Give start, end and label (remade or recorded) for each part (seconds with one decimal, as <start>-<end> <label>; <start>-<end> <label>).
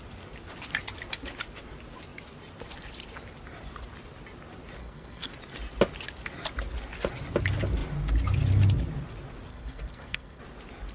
0.0-4.8 recorded; 4.8-5.3 remade; 5.3-9.5 recorded; 9.5-10.4 remade; 10.4-10.9 recorded